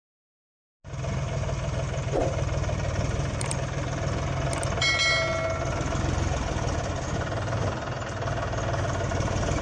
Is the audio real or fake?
real